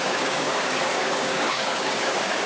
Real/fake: fake